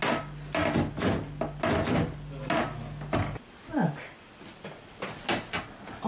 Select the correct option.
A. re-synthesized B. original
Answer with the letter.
B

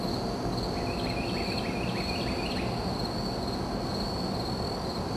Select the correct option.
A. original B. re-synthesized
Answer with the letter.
A